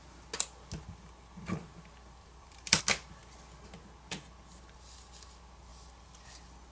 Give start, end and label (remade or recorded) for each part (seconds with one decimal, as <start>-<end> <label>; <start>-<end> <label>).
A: 0.0-2.2 recorded; 2.2-2.8 remade; 2.8-6.7 recorded